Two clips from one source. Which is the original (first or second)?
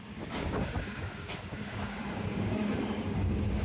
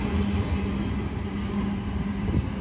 second